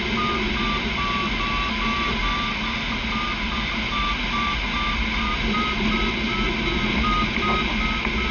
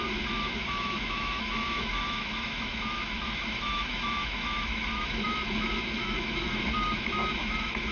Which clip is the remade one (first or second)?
second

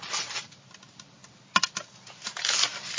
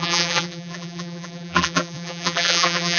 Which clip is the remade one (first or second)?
second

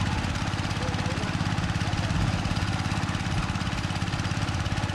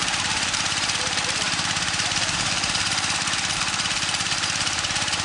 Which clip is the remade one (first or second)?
second